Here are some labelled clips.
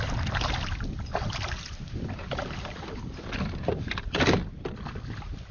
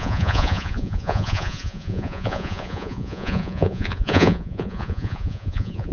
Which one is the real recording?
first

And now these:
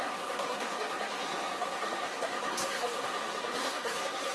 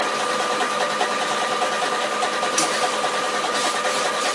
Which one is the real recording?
second